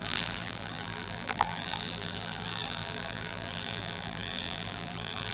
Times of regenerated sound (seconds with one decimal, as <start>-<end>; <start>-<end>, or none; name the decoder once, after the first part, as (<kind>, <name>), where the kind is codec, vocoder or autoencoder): 0.0-5.3 (vocoder, BigVGAN v2)